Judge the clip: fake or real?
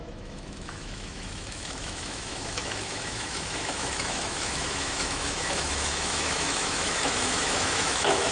fake